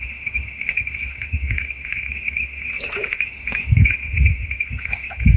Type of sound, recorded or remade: remade